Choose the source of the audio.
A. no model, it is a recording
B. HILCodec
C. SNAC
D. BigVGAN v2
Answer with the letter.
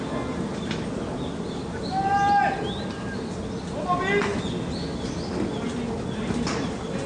A